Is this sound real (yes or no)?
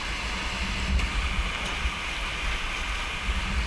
yes